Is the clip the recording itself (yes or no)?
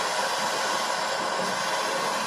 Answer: yes